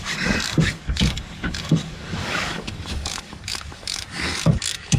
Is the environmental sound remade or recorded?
remade